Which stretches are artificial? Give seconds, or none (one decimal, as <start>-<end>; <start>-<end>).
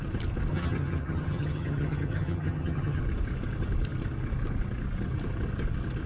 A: 0.5-3.0